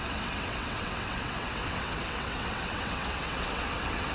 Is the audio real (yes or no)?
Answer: no